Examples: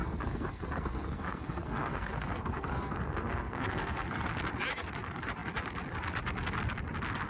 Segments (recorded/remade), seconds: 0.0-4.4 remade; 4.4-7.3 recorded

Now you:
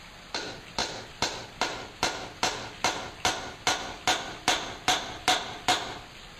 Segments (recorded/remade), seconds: 0.0-6.4 recorded

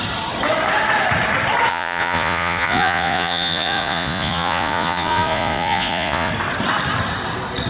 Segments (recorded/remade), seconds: 0.0-1.7 recorded; 1.7-6.3 remade; 6.3-7.7 recorded